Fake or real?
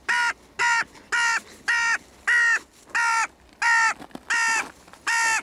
real